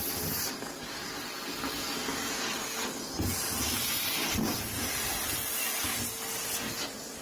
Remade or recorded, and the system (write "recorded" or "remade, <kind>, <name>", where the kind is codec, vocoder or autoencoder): recorded